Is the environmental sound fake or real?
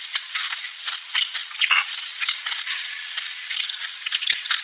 fake